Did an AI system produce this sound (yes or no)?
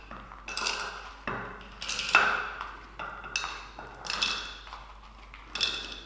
no